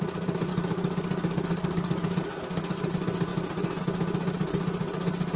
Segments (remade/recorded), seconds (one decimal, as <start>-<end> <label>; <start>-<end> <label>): 0.0-0.5 recorded; 0.5-2.9 remade; 2.9-5.4 recorded